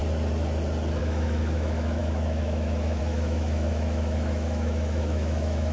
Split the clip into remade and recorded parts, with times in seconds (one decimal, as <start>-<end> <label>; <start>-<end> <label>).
0.0-1.0 recorded; 1.0-5.7 remade